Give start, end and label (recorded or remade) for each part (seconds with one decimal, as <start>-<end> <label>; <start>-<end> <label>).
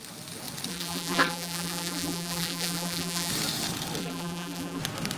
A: 0.0-0.7 recorded; 0.7-3.3 remade; 3.3-4.0 recorded; 4.0-4.8 remade; 4.8-5.2 recorded